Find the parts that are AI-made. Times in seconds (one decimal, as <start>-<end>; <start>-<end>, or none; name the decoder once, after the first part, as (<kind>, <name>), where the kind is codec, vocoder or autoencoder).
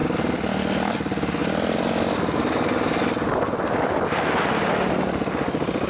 none